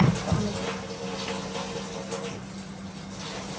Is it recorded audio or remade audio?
recorded